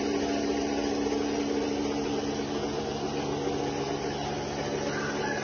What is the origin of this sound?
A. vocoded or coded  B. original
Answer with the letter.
B